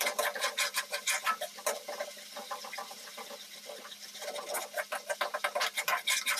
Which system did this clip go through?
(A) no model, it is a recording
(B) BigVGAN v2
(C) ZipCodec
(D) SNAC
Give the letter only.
B